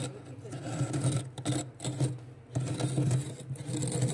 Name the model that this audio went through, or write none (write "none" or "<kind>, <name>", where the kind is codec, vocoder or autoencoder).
none